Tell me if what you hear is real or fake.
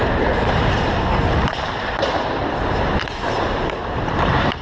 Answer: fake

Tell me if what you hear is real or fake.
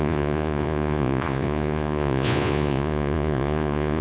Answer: fake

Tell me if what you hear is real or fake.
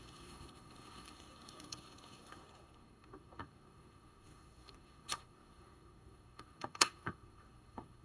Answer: fake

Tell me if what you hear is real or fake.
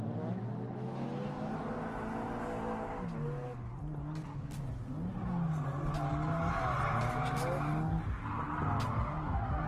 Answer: real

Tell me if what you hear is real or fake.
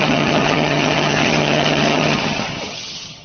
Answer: fake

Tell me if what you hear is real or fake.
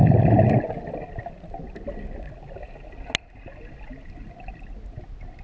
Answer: real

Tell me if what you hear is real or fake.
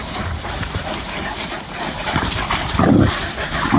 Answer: fake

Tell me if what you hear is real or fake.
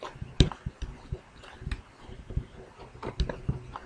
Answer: real